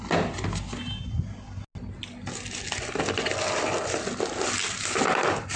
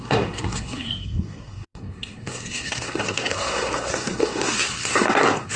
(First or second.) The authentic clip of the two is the first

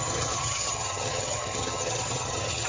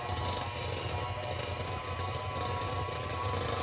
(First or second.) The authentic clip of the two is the second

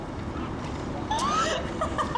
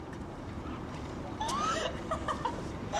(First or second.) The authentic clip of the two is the first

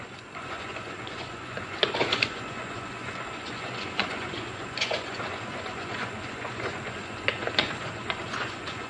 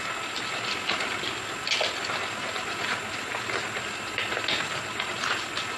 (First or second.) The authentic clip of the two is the second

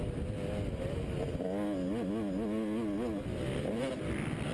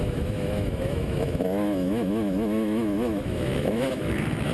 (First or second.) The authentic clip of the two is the first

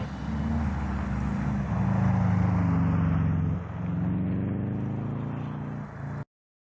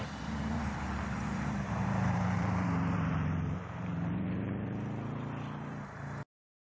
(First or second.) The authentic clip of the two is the first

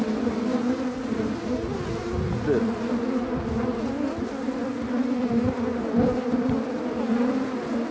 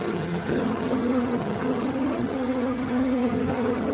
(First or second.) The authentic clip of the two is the first